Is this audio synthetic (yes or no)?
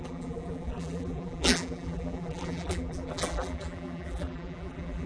yes